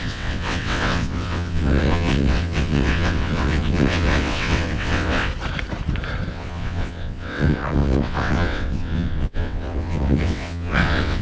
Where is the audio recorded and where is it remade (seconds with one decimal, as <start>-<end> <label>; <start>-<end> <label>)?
0.0-5.3 remade; 5.3-6.3 recorded; 6.3-11.2 remade